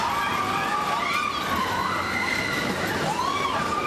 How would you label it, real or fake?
real